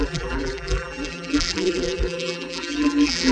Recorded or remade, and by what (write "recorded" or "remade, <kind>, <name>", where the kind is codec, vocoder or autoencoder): remade, vocoder, BigVGAN v2